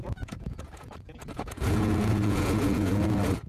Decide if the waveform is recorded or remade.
remade